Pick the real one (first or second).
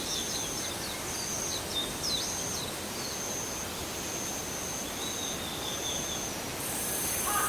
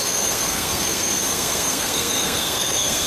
first